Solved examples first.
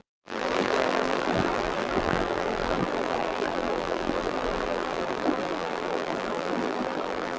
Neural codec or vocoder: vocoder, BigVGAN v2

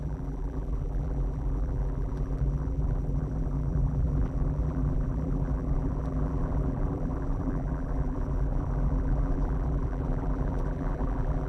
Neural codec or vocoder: vocoder, BigVGAN v2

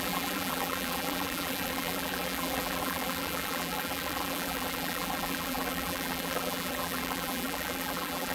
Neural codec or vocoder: vocoder, BigVGAN v2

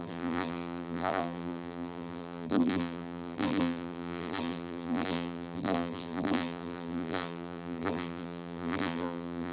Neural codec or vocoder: vocoder, BigVGAN v2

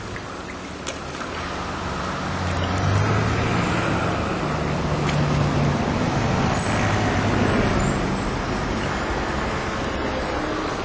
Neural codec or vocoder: none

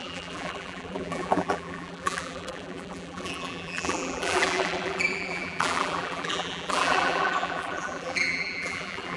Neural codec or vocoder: vocoder, BigVGAN v2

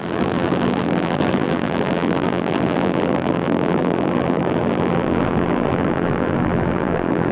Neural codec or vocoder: vocoder, BigVGAN v2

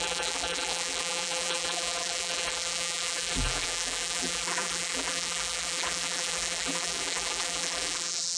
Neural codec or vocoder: vocoder, BigVGAN v2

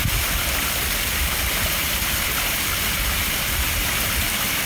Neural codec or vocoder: vocoder, BigVGAN v2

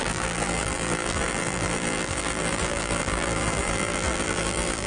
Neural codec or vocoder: vocoder, BigVGAN v2